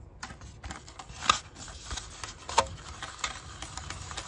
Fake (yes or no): no